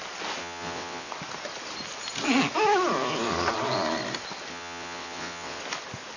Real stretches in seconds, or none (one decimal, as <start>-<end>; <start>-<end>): 0.0-0.4; 1.1-4.5; 5.6-6.2